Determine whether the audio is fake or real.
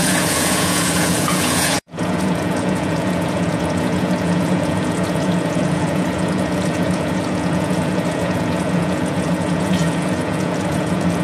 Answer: fake